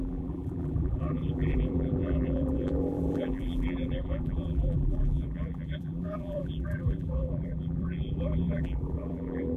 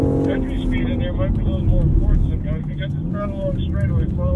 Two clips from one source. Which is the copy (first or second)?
first